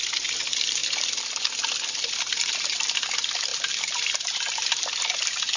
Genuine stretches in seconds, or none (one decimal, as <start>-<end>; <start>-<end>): 0.0-3.5; 4.1-5.6